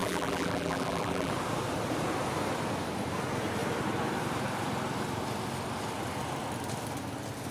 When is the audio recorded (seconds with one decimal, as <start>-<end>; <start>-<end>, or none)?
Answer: 1.3-7.5